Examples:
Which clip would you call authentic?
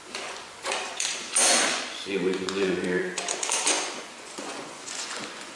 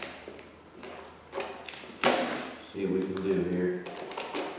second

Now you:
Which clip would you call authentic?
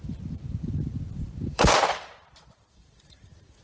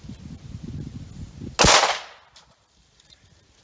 second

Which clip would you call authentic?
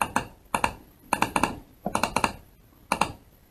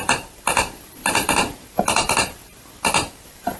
first